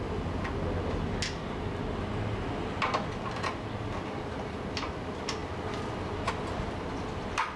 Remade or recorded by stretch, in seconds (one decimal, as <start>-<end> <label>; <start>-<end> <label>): 0.0-7.6 recorded